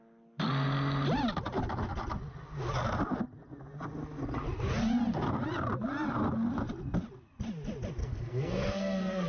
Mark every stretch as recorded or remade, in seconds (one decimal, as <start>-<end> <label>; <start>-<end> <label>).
0.0-8.0 recorded; 8.0-9.3 remade